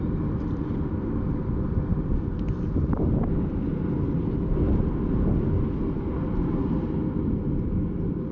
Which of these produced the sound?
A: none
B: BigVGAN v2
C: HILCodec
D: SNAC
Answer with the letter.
A